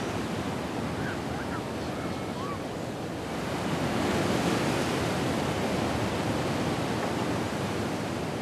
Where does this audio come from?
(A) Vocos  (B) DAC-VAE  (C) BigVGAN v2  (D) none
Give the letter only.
D